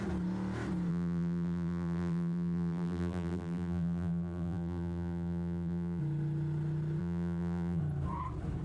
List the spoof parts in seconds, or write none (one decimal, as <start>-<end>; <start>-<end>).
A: 0.9-6.0; 7.0-7.8